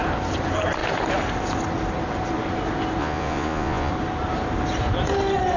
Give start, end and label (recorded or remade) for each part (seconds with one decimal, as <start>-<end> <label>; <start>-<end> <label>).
0.0-3.0 recorded; 3.0-3.9 remade; 3.9-5.6 recorded